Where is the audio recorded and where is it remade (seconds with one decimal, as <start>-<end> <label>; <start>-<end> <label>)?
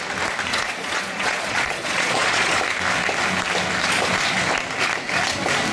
0.0-0.5 recorded; 0.5-2.5 remade; 2.5-5.7 recorded